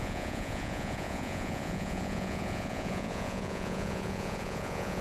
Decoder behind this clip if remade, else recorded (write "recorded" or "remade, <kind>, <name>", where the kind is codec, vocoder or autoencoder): remade, vocoder, Vocos